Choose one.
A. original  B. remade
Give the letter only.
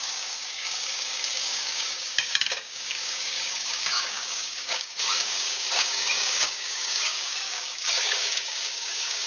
B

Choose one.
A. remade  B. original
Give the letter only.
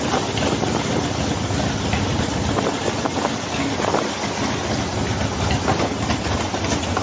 B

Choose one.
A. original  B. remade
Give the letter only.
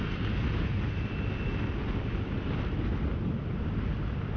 A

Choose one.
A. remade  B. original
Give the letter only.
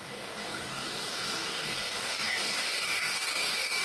A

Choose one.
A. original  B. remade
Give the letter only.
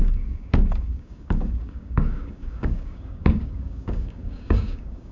B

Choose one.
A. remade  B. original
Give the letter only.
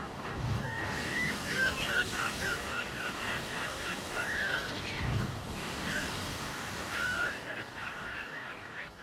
A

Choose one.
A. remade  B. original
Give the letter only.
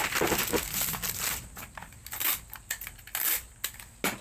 B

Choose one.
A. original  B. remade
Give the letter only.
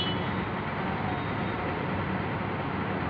A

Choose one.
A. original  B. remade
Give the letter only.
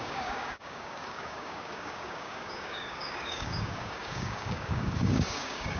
B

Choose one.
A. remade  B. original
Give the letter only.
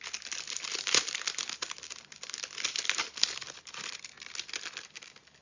B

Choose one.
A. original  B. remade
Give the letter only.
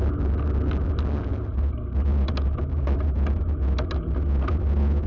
A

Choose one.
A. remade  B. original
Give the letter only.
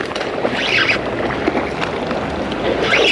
B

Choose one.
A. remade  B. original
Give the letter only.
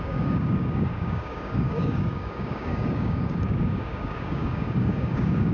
A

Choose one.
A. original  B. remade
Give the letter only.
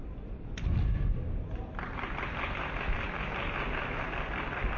A